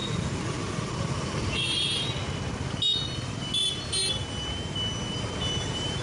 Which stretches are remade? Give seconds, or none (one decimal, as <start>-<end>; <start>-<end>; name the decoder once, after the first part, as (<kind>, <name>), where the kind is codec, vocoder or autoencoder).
0.0-2.7 (vocoder, BigVGAN v2)